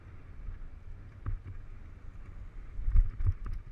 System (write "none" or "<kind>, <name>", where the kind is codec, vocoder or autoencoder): none